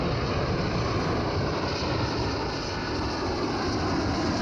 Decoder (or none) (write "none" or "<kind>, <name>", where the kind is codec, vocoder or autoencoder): none